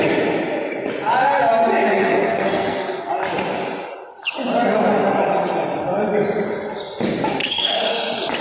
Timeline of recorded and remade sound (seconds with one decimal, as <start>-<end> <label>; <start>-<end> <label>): 0.0-1.9 recorded; 1.9-3.1 remade; 3.1-7.4 recorded; 7.4-7.9 remade; 7.9-8.4 recorded